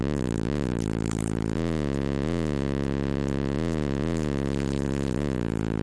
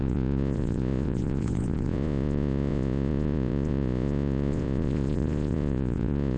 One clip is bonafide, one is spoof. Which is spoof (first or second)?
second